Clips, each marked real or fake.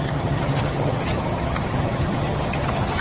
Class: fake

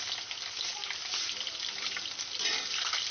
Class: real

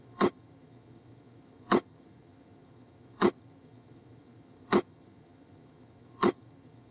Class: fake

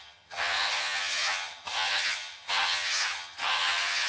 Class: fake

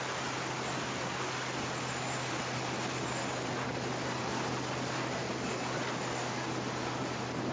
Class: real